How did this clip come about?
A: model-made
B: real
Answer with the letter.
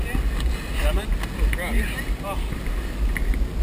B